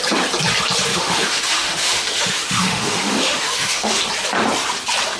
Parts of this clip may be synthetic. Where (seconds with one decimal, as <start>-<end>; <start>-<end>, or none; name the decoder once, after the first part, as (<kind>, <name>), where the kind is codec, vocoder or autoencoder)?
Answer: 0.9-4.0 (autoencoder, DAC-VAE)